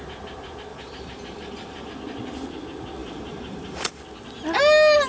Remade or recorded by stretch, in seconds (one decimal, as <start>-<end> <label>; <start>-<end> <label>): 0.0-0.7 recorded; 0.7-1.9 remade; 1.9-3.0 recorded; 3.0-4.0 remade; 4.0-5.1 recorded